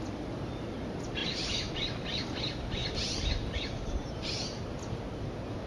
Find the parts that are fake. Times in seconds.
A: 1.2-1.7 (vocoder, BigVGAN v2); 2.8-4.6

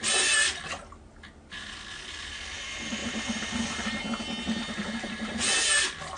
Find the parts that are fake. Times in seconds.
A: 3.0-4.0 (vocoder, BigVGAN v2); 4.8-5.3

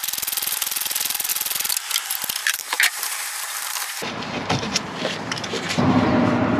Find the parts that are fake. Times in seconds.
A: 2.4-6.6 (vocoder, BigVGAN v2)

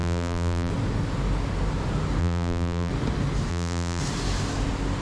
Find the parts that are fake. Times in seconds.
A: 0.0-0.7 (vocoder, BigVGAN v2); 2.2-2.9; 3.5-4.0

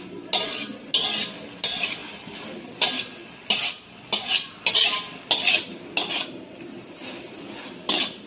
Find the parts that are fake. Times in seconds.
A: 2.0-3.0 (vocoder, BigVGAN v2)

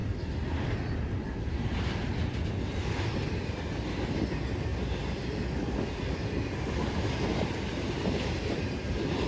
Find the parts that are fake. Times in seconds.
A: 4.7-5.5 (vocoder, BigVGAN v2); 7.3-8.9

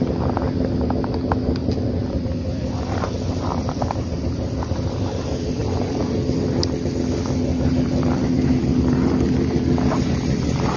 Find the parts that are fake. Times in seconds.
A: 5.6-8.6 (vocoder, BigVGAN v2)